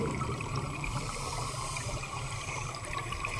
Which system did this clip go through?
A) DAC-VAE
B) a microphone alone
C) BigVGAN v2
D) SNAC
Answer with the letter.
C